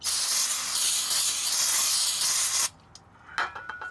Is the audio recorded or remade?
recorded